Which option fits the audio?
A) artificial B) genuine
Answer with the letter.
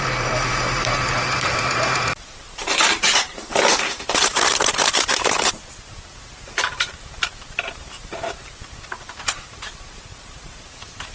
A